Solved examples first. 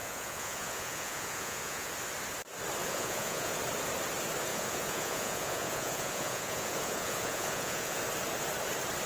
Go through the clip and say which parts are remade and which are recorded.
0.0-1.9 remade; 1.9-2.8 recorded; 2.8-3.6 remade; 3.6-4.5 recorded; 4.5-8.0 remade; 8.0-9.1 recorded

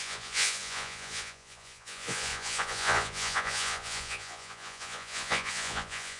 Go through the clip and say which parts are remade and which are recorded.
0.0-6.2 remade

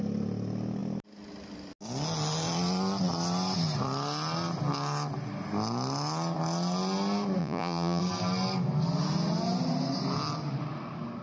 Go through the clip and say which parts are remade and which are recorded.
0.0-7.4 recorded; 7.4-8.0 remade; 8.0-11.2 recorded

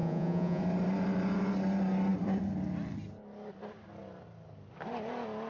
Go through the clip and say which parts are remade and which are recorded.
0.0-0.6 remade; 0.6-5.5 recorded